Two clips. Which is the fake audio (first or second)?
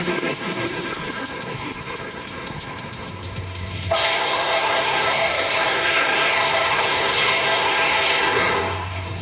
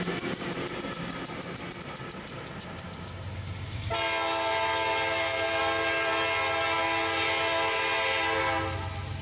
first